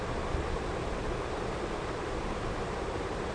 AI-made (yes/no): yes